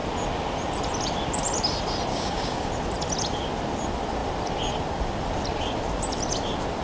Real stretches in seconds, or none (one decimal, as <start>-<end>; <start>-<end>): 0.0-2.1; 2.7-6.8